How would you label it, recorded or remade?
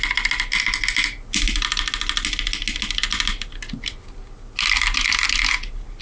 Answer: recorded